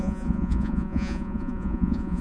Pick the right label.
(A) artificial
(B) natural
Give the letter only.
A